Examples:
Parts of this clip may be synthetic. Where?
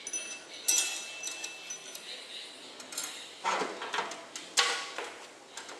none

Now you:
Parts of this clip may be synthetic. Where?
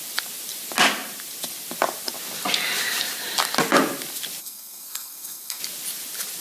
4.4-5.6 (codec, SNAC)